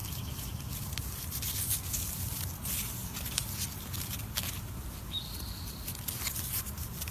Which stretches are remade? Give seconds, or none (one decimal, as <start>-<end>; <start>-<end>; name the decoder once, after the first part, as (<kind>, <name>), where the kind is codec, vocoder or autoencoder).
0.0-1.7 (vocoder, BigVGAN v2)